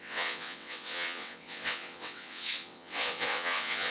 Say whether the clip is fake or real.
fake